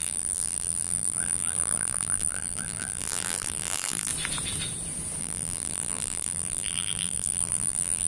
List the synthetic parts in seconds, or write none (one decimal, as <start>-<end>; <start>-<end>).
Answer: 0.0-4.1; 5.2-8.1